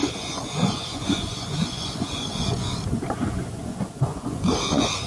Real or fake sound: fake